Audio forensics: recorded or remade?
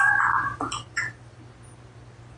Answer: recorded